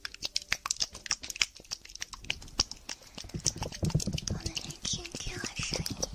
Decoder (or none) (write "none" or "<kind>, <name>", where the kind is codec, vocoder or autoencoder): none